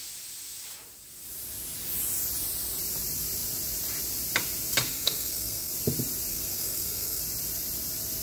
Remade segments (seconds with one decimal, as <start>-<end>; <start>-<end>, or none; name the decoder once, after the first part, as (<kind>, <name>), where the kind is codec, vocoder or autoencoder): 4.9-5.7 (codec, SNAC); 6.3-7.2